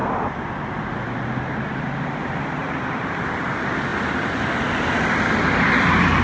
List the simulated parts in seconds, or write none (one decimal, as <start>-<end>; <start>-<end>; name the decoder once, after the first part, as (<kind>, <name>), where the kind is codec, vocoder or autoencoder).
2.6-3.2 (vocoder, BigVGAN v2); 3.9-4.7